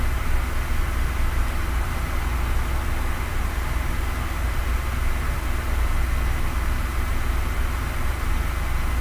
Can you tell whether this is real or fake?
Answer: real